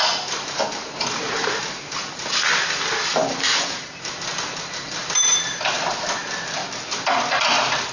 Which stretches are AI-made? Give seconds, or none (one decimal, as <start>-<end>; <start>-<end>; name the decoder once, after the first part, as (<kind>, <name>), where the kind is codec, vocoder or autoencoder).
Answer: 5.0-5.7 (vocoder, BigVGAN v2)